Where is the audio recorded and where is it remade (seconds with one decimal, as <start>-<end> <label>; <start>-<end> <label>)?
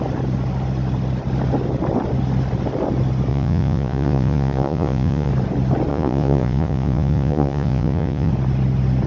0.0-3.3 recorded; 3.3-5.3 remade; 5.3-5.9 recorded; 5.9-8.3 remade; 8.3-9.1 recorded